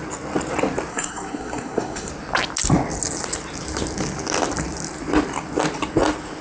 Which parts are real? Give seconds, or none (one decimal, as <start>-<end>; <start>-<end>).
0.0-0.9; 2.1-6.4